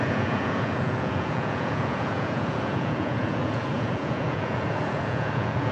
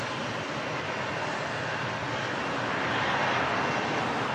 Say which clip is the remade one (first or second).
first